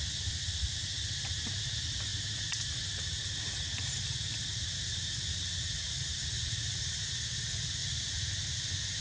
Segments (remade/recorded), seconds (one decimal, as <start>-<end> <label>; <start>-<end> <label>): 0.0-9.0 recorded